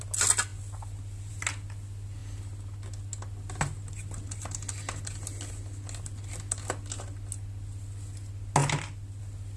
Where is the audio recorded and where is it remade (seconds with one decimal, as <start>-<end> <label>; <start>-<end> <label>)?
0.0-9.6 recorded